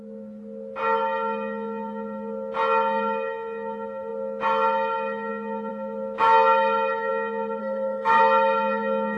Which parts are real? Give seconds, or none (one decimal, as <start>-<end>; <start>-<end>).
0.0-7.6; 8.2-9.2